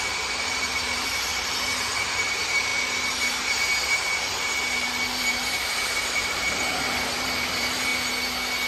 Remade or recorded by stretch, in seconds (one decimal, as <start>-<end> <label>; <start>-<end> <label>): 0.0-7.9 remade; 7.9-8.7 recorded